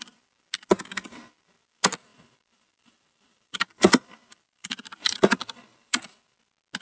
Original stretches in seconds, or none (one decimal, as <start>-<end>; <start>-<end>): 0.0-2.1; 6.2-6.8